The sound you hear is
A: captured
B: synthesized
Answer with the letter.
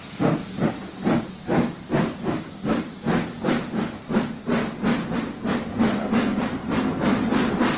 A